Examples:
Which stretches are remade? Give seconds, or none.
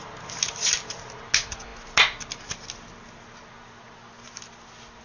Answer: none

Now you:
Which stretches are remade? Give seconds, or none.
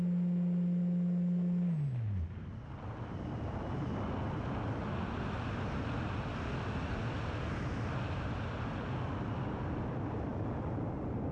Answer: none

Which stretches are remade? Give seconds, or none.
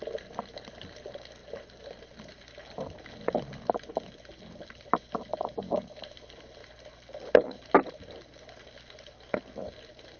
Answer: none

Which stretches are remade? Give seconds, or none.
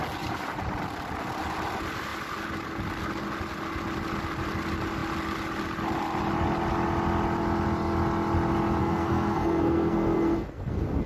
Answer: 8.8-11.1 (codec, SNAC)